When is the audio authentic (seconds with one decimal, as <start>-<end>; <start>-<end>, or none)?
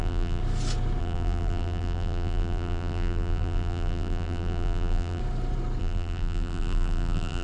0.4-1.0; 5.2-5.8